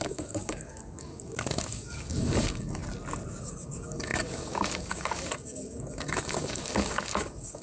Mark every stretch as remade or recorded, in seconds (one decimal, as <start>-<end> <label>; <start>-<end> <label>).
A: 0.0-2.8 remade; 2.8-3.4 recorded; 3.4-7.6 remade